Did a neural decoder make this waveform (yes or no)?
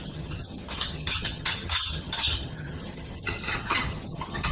yes